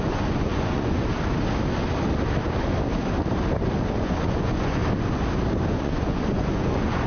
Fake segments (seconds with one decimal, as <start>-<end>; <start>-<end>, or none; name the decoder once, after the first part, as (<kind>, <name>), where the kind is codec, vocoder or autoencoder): 0.0-1.1 (vocoder, Vocos); 4.0-4.8; 5.7-7.1